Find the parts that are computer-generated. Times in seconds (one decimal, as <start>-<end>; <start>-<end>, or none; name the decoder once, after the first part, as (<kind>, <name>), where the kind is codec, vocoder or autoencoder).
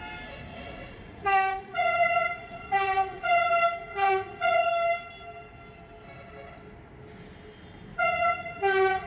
0.5-3.5 (vocoder, Vocos); 3.9-4.7; 7.9-9.1